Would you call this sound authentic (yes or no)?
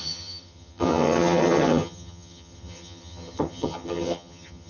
no